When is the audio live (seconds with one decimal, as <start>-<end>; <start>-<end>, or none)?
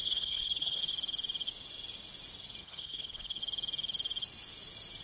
0.8-2.6; 3.4-5.0